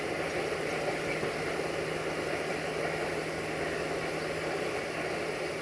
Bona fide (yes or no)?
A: yes